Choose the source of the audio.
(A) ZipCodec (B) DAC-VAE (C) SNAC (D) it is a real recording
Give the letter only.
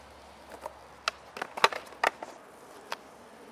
D